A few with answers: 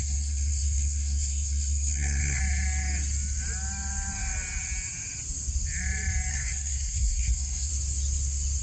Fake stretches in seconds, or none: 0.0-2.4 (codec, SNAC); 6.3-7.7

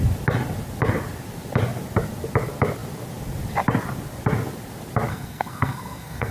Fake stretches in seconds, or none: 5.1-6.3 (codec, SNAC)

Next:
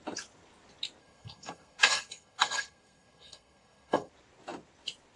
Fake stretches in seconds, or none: 1.0-4.1 (codec, SNAC)

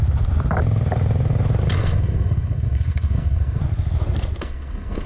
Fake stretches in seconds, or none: 1.7-3.6 (codec, SNAC); 4.4-5.1